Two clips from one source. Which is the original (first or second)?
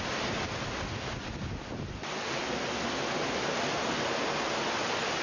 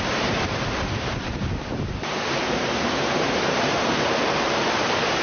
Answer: first